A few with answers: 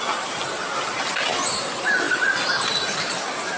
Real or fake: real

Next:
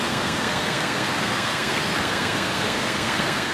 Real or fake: fake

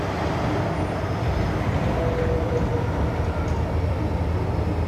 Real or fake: real